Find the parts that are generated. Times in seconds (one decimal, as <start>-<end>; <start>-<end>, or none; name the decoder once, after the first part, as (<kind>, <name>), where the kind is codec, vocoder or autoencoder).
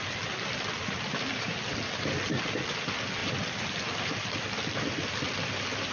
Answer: none